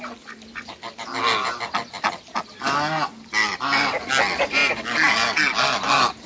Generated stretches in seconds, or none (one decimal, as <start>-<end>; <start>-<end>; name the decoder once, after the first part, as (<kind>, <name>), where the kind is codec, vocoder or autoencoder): none

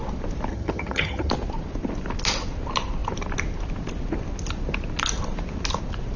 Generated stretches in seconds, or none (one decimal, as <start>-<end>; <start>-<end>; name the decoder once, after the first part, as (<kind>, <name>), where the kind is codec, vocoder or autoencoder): 0.5-1.3 (vocoder, HiFi-GAN)

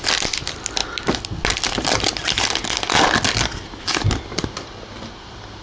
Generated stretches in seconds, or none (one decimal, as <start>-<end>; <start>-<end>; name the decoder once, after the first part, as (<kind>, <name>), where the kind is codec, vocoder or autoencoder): none